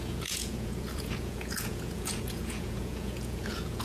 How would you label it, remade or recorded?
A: remade